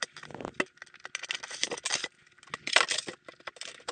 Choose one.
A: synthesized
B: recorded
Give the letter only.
B